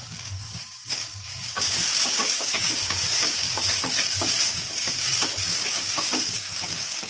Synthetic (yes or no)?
yes